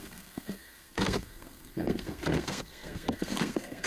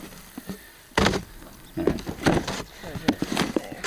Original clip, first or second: second